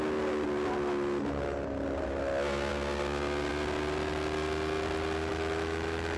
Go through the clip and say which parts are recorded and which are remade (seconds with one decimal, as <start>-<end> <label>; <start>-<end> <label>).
0.0-5.3 recorded; 5.3-6.2 remade